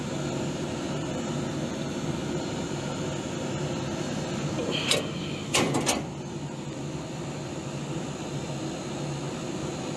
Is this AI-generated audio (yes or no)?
no